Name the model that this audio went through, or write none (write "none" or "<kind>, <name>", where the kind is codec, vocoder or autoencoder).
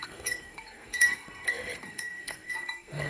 codec, SNAC